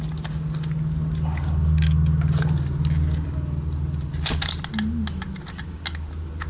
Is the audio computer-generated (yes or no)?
no